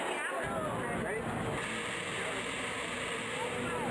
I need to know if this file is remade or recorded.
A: recorded